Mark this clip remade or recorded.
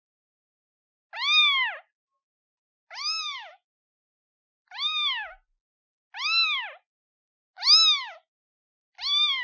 recorded